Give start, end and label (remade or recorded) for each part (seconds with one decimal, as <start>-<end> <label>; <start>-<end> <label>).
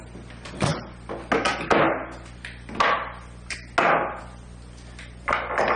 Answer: 0.0-5.8 recorded